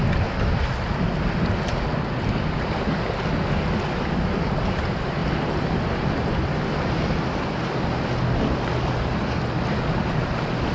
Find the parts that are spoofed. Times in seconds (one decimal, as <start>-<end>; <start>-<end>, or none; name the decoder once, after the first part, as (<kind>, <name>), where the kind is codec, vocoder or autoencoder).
5.2-6.1 (vocoder, BigVGAN v2)

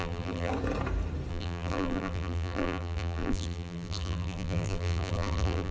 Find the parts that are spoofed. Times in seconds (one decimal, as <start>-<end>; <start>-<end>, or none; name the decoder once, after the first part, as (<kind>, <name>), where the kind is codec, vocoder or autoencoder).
0.0-0.5 (vocoder, BigVGAN v2); 1.3-5.7